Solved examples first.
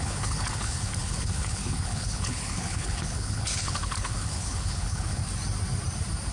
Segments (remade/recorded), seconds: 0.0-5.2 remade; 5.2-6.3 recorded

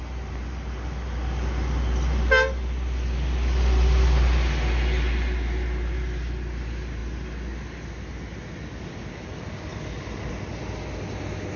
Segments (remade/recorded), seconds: 0.0-11.6 recorded

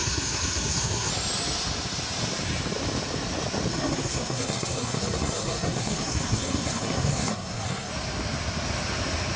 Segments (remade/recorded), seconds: 0.0-1.1 remade; 1.1-3.7 recorded; 3.7-7.9 remade; 7.9-9.4 recorded

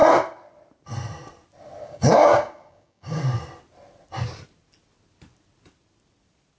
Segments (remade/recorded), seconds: 0.0-1.8 recorded; 1.8-3.2 remade; 3.2-6.6 recorded

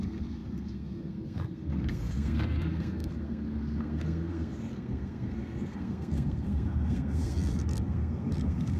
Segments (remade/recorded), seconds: 0.0-8.8 remade

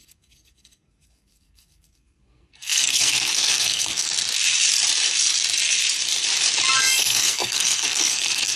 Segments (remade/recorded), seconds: 0.0-4.1 remade; 4.1-6.8 recorded; 6.8-8.6 remade

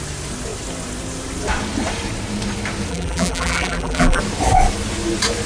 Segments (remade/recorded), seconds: 0.0-2.9 recorded; 2.9-4.2 remade; 4.2-5.5 recorded

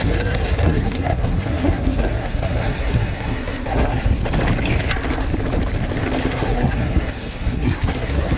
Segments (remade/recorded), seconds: 0.0-4.2 remade; 4.2-6.2 recorded; 6.2-8.4 remade